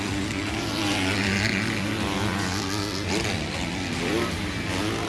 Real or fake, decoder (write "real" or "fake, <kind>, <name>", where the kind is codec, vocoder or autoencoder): real